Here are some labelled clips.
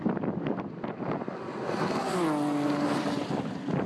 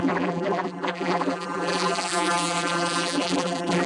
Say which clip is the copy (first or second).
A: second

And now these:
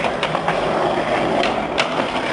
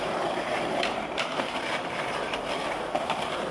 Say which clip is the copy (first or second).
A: second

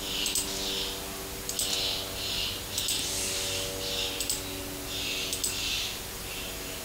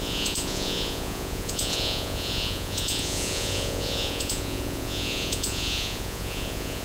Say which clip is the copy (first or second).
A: second